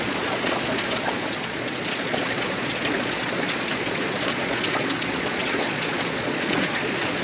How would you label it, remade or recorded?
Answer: remade